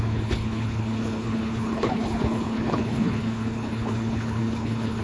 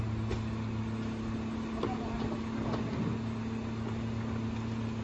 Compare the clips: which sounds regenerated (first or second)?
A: first